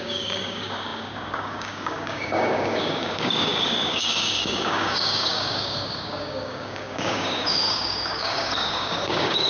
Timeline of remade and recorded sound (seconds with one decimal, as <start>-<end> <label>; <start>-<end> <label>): 0.0-9.5 remade